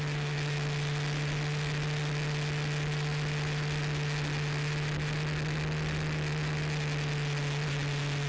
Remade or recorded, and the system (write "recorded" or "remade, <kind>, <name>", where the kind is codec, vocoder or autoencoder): recorded